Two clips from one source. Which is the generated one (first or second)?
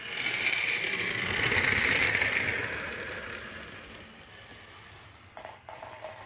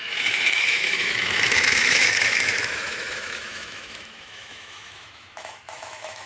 second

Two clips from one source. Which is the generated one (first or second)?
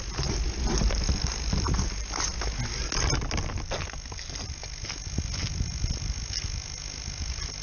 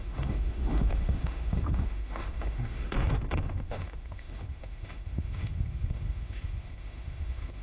second